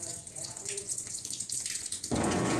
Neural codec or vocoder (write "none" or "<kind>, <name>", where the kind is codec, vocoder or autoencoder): vocoder, Vocos